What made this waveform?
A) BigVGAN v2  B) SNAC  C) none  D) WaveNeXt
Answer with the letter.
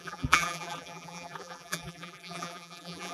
A